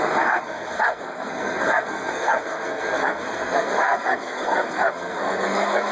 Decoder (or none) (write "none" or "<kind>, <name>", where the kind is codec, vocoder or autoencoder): codec, SNAC